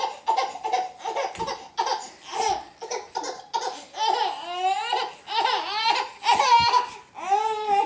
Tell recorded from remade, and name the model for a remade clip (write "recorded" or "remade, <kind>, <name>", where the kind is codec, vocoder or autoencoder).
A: recorded